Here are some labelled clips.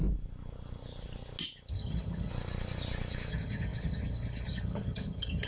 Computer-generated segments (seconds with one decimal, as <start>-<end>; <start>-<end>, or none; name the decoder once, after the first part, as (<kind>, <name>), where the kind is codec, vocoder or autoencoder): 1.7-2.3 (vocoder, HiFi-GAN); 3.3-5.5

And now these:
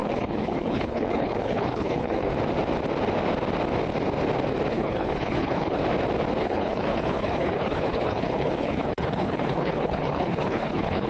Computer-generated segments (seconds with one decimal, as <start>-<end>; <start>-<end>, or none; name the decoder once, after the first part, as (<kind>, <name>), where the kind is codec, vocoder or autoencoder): 0.0-2.3 (codec, HILCodec); 4.7-5.8; 6.4-11.1

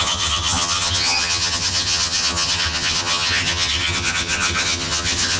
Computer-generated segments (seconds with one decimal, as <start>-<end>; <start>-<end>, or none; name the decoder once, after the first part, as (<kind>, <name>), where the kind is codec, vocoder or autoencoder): 0.0-5.4 (vocoder, HiFi-GAN)

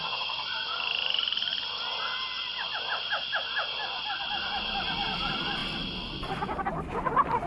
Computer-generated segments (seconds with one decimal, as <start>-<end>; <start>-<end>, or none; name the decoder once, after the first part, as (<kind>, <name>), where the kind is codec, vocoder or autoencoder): 5.6-6.3 (vocoder, BigVGAN v2)

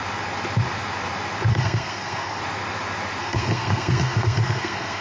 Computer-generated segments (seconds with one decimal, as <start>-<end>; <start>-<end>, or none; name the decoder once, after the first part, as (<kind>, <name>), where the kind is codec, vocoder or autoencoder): 1.5-2.4 (codec, SNAC); 3.2-5.0